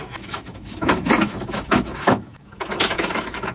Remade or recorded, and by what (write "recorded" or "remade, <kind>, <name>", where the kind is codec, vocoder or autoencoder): remade, autoencoder, DAC-VAE